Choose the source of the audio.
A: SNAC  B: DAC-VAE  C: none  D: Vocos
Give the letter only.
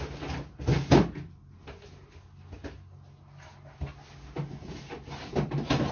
C